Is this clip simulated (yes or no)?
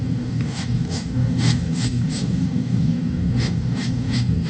yes